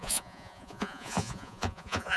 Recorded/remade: remade